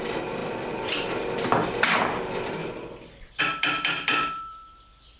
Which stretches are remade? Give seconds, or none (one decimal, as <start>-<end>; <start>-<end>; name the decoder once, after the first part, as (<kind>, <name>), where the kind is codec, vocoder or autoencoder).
0.0-5.2 (vocoder, BigVGAN v2)